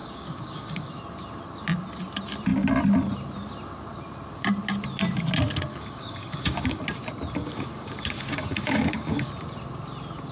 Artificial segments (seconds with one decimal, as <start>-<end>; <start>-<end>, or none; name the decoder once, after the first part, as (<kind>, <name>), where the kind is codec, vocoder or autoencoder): 0.0-1.0 (codec, DAC); 5.7-6.8; 7.4-9.3